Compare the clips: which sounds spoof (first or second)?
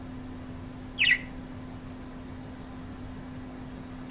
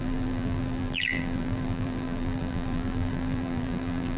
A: second